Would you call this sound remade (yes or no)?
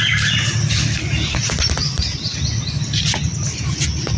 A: no